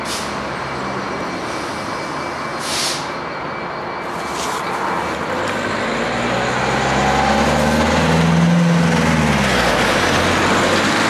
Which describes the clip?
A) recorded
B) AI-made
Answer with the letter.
A